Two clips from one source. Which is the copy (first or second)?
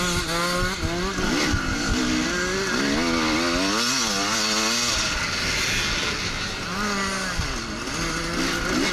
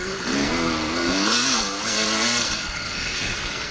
second